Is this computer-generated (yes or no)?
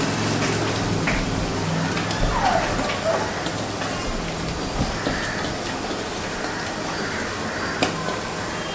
no